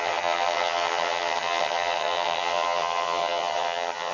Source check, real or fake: fake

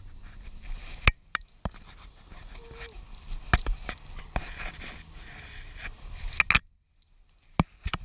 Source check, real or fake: real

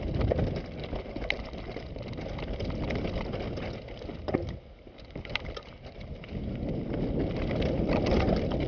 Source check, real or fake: real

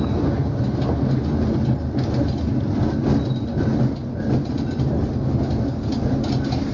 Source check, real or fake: real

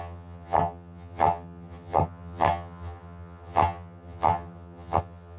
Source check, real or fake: fake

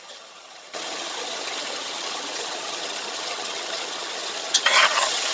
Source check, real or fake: fake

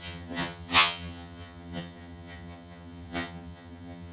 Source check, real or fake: fake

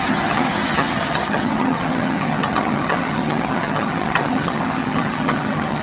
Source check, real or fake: fake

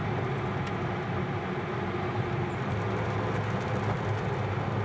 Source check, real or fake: real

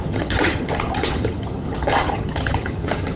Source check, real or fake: fake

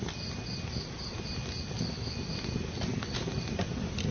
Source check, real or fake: real